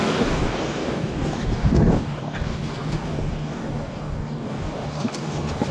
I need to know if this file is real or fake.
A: fake